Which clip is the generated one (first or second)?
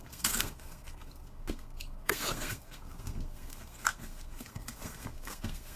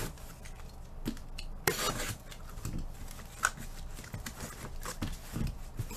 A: first